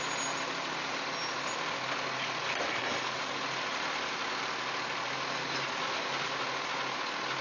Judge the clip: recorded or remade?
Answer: recorded